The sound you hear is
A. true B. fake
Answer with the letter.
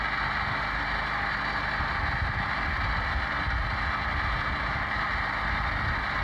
A